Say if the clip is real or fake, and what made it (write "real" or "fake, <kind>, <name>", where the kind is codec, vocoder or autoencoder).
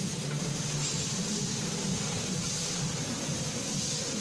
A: real